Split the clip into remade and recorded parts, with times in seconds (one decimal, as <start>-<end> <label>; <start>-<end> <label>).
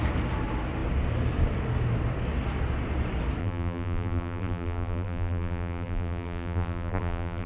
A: 0.0-3.4 recorded; 3.4-7.5 remade